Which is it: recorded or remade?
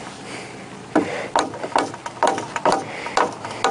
recorded